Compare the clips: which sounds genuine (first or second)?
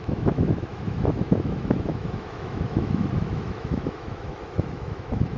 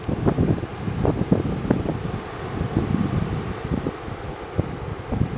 second